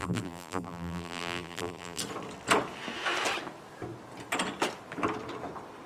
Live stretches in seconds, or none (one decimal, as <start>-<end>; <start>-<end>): 2.0-5.9